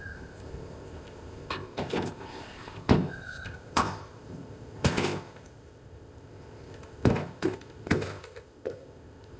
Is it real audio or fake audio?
fake